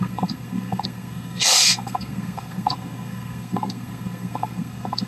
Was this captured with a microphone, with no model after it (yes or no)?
no